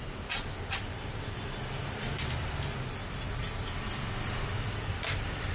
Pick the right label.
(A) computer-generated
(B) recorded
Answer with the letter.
B